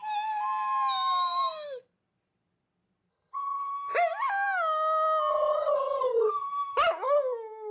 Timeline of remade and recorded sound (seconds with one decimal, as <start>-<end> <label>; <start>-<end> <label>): 0.0-3.1 recorded; 3.1-3.7 remade; 3.7-5.3 recorded; 5.3-6.3 remade; 6.3-7.7 recorded